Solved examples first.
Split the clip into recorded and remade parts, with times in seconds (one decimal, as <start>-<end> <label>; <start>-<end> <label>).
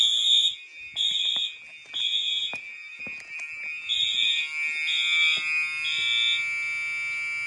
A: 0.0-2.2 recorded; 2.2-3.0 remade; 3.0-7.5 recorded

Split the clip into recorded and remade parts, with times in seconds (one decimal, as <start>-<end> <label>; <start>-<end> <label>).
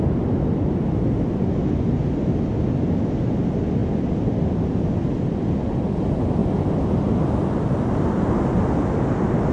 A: 0.0-9.5 recorded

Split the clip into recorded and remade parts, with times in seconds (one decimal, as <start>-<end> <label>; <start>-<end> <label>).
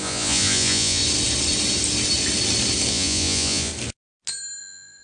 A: 0.0-1.0 remade; 1.0-2.9 recorded; 2.9-3.7 remade; 3.7-4.6 recorded; 4.6-5.0 remade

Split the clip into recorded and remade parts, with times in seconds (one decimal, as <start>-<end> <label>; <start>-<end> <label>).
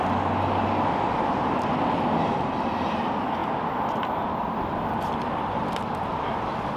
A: 0.0-6.8 recorded